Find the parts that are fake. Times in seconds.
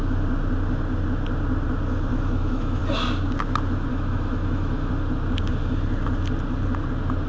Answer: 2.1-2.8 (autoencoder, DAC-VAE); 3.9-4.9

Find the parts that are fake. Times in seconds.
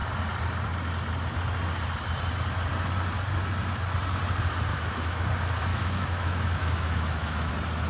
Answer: 4.7-5.3 (autoencoder, DAC-VAE); 5.7-7.5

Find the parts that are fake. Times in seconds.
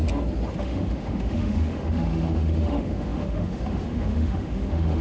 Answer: 0.6-5.0 (autoencoder, DAC-VAE)